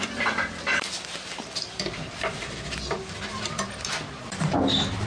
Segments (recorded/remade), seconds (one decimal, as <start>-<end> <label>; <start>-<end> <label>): 0.0-2.3 remade; 2.3-5.1 recorded